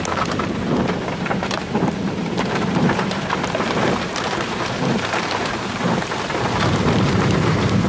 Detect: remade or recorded remade